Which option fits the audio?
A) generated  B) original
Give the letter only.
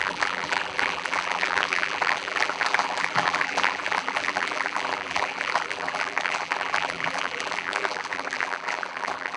A